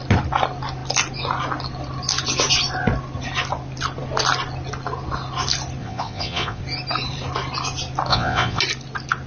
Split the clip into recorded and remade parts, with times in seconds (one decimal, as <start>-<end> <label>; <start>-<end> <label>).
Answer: 0.0-5.8 recorded; 5.8-6.6 remade; 6.6-8.1 recorded; 8.1-8.6 remade; 8.6-9.3 recorded